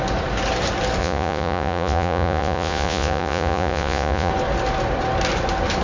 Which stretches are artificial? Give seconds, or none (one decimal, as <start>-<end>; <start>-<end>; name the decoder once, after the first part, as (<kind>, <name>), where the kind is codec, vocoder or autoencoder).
1.0-4.3 (vocoder, Vocos)